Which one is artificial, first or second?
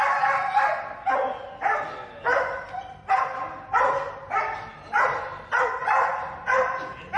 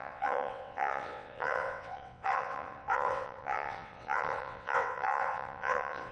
second